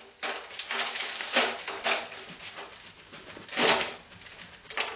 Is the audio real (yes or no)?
yes